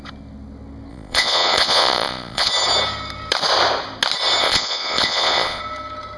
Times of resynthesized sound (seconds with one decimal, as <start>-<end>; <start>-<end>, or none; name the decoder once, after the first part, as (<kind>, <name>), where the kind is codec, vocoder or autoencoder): 0.9-2.5 (vocoder, Vocos); 4.4-5.6